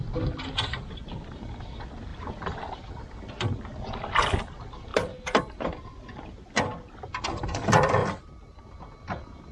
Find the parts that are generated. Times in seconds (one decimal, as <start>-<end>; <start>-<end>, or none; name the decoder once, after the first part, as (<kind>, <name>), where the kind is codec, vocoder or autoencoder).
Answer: 2.1-2.6 (vocoder, BigVGAN v2); 8.0-8.7